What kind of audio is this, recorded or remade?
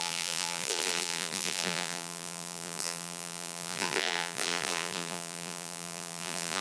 remade